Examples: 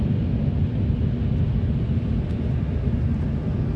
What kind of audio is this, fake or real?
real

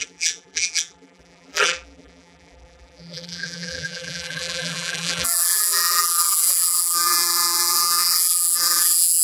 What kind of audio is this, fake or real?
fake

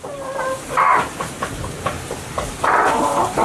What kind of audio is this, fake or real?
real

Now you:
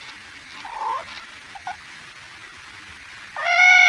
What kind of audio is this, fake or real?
real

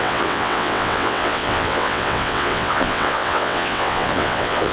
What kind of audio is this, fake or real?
fake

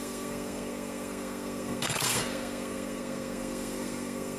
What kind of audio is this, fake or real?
fake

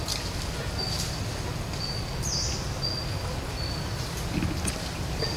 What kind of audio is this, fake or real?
real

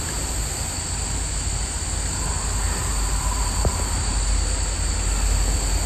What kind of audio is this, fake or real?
real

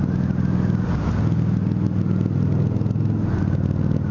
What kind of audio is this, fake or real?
real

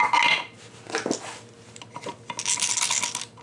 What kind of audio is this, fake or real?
real